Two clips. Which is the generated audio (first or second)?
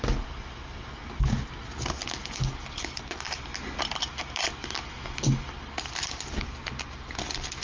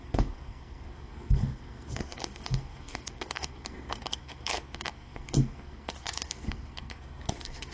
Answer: second